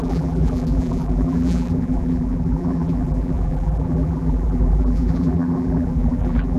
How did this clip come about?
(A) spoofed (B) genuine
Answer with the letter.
A